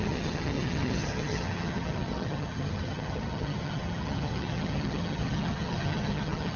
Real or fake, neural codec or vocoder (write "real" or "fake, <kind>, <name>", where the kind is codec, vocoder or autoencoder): fake, vocoder, HiFi-GAN